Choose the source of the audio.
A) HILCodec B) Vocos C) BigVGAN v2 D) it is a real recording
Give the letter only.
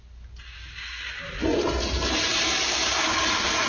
D